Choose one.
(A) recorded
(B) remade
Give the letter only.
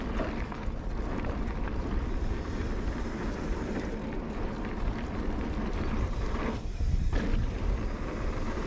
B